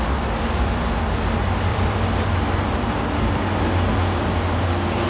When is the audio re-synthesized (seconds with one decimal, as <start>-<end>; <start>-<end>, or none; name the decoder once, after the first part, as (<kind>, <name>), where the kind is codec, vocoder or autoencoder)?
1.7-3.6 (vocoder, BigVGAN v2)

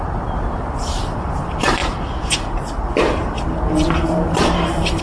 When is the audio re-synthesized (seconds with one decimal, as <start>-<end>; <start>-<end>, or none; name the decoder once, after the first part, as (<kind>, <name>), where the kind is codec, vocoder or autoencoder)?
0.0-5.0 (vocoder, BigVGAN v2)

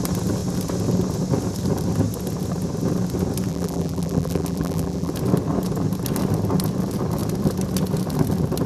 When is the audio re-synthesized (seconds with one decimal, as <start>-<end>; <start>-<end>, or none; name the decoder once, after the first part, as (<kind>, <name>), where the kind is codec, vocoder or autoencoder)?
3.5-5.1 (vocoder, BigVGAN v2)

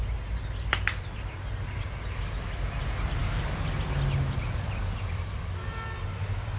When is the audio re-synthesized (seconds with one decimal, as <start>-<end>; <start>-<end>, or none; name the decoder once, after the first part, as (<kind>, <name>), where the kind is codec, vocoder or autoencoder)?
none

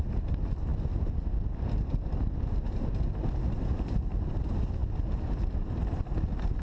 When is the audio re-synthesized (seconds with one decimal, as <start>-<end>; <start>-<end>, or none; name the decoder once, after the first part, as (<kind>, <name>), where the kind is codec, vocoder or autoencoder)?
none